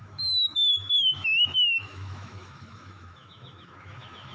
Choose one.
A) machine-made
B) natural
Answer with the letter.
A